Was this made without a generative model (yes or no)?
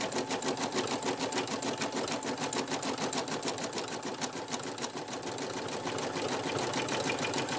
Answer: no